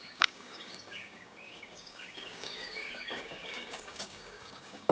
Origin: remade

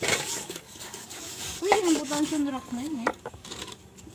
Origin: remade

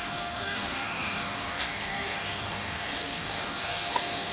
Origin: remade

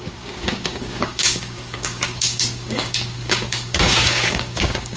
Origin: remade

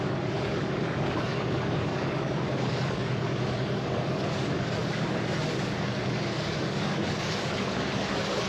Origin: remade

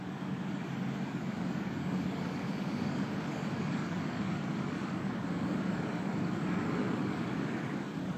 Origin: remade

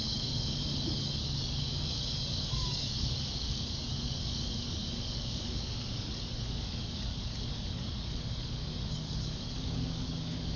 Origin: remade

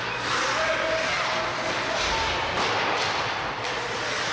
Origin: recorded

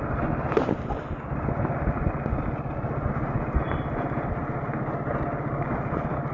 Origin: recorded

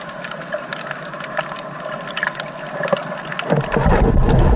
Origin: recorded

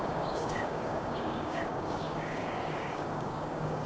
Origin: remade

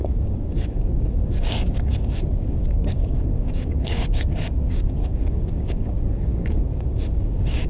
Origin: remade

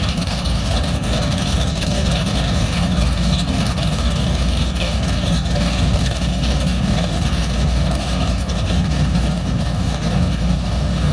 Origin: remade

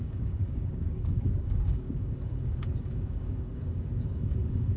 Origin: remade